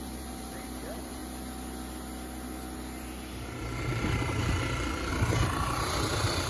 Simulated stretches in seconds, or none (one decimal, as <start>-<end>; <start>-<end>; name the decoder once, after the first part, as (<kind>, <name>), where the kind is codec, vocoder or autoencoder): 0.0-1.2 (vocoder, BigVGAN v2); 5.1-6.5